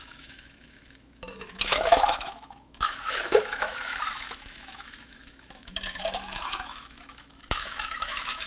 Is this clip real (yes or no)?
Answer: no